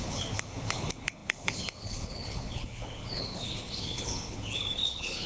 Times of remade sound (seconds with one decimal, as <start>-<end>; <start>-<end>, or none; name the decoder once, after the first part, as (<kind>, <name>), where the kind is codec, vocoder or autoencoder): 0.0-5.3 (codec, HILCodec)